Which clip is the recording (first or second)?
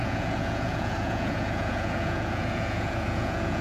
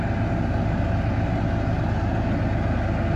second